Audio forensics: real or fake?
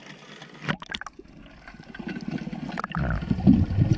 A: real